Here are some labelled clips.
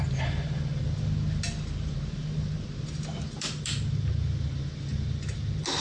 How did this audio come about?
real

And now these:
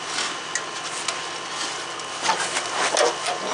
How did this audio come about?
real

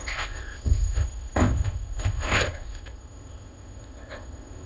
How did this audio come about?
fake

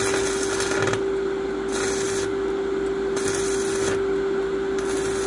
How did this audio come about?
real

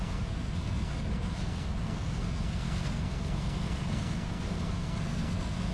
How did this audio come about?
fake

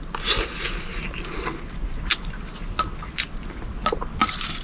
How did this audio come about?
real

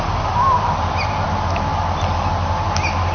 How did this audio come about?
real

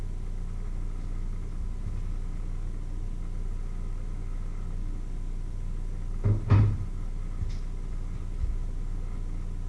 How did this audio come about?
real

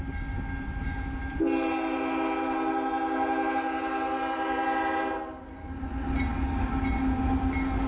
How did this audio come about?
real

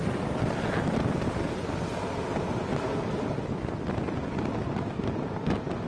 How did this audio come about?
real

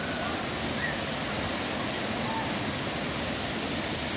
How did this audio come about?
real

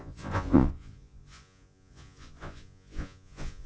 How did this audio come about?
fake